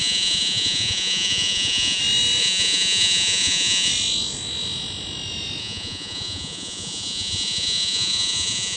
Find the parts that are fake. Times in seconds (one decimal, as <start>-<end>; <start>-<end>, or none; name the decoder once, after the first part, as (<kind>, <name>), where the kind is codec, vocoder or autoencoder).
0.0-2.0 (vocoder, Vocos); 2.4-3.9; 5.6-8.8